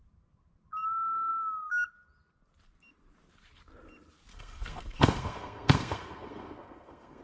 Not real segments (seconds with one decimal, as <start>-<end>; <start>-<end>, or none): 4.3-7.2